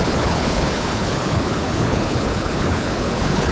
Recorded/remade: remade